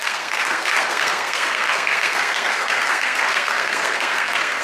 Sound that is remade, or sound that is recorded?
remade